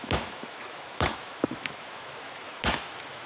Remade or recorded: remade